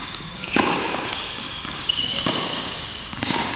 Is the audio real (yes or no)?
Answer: no